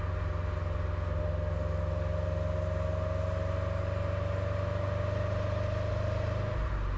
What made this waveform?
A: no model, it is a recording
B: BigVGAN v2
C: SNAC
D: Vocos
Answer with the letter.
A